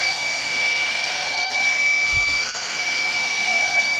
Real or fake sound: fake